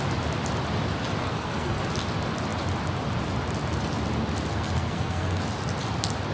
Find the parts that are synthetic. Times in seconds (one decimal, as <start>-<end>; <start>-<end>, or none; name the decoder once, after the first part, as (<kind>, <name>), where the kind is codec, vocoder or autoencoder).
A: 1.2-1.8 (codec, SNAC); 4.5-5.4